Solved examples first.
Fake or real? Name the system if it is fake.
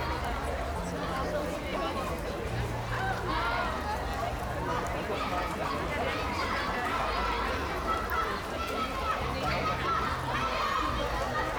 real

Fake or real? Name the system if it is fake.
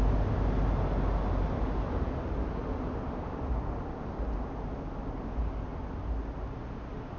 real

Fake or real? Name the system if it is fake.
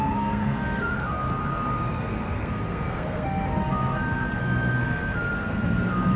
fake, codec, SNAC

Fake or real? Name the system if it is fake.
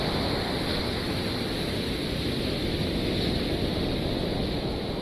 real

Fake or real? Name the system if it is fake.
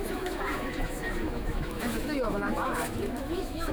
fake, autoencoder, DAC-VAE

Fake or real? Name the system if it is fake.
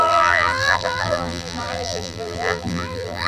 fake, vocoder, BigVGAN v2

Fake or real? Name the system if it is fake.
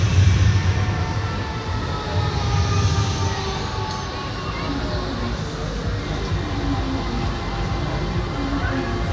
real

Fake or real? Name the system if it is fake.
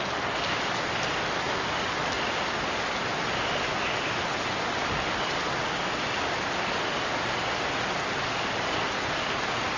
real